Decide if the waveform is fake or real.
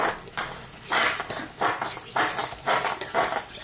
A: real